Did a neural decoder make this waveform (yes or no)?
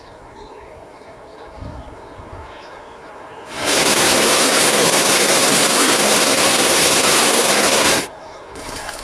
yes